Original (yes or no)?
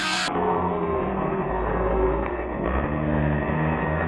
no